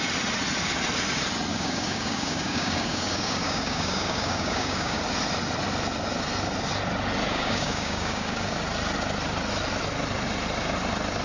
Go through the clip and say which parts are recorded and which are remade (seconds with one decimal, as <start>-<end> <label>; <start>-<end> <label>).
0.0-1.5 recorded; 1.5-5.0 remade; 5.0-7.3 recorded; 7.3-8.6 remade; 8.6-11.2 recorded